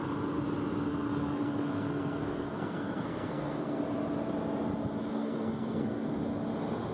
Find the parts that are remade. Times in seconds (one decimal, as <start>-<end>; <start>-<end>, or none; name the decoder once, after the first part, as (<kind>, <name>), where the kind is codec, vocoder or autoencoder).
0.9-3.8 (codec, SNAC); 5.1-6.1